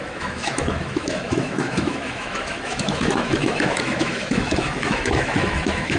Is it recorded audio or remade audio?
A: remade